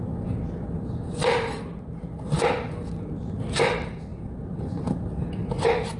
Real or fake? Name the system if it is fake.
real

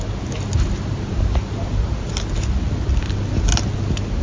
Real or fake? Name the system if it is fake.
real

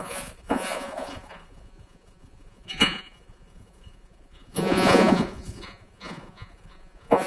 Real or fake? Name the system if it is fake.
fake, vocoder, Vocos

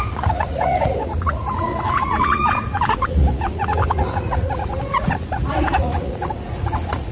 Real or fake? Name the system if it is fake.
fake, vocoder, Vocos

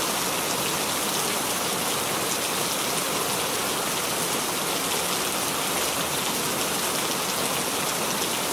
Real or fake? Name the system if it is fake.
real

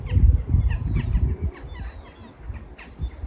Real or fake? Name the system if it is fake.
real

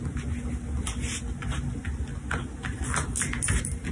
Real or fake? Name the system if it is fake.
real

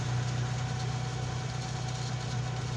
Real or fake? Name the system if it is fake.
real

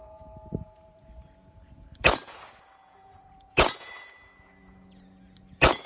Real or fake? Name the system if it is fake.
fake, vocoder, Vocos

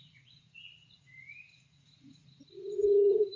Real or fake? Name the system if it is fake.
fake, vocoder, Vocos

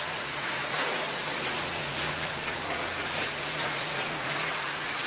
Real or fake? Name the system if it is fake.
fake, vocoder, Vocos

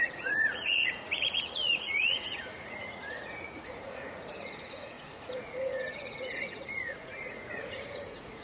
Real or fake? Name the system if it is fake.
fake, vocoder, Vocos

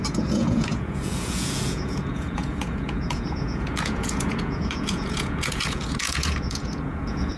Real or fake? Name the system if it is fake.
fake, vocoder, Vocos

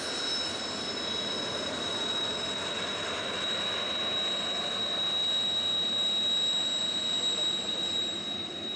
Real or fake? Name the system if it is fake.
real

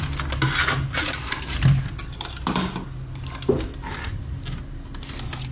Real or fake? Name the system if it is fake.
real